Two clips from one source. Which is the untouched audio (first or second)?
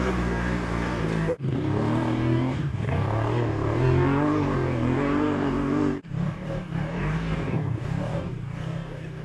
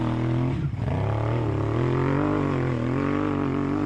second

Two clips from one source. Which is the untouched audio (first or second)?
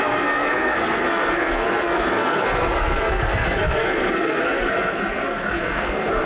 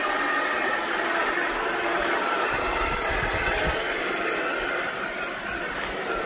second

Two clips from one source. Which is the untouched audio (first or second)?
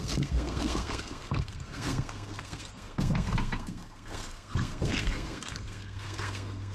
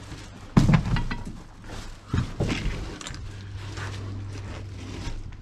second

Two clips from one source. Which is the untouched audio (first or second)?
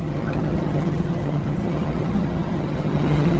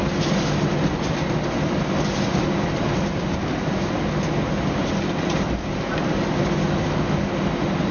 second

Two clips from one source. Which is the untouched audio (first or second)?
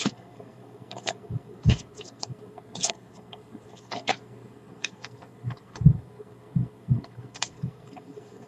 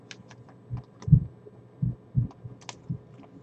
second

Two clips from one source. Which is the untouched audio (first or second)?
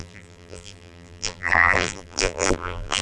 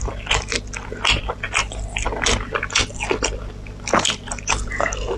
second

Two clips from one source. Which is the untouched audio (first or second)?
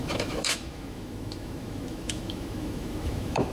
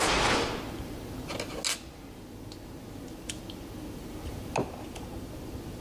second